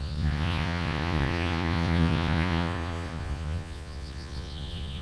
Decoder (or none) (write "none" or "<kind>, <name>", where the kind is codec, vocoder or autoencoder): vocoder, Vocos